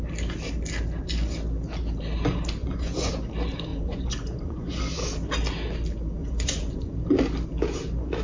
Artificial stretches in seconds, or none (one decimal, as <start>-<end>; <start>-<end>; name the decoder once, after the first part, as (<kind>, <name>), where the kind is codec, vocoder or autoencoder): 2.6-3.1 (vocoder, Vocos); 3.7-4.8; 6.2-6.9